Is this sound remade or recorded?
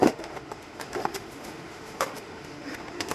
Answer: remade